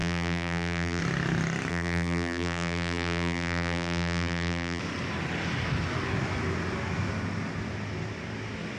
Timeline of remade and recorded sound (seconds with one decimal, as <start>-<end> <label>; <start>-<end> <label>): 0.0-1.0 remade; 1.0-1.7 recorded; 1.7-4.8 remade; 4.8-8.8 recorded